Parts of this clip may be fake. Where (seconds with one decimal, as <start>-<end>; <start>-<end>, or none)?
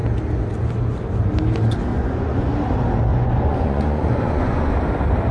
1.9-2.5; 3.1-4.7